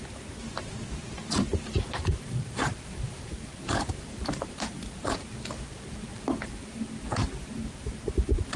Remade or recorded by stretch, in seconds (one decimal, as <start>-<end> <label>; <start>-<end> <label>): 0.0-1.5 recorded; 1.5-5.0 remade; 5.0-8.6 recorded